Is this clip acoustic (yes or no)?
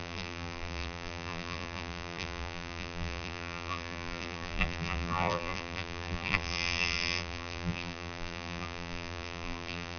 no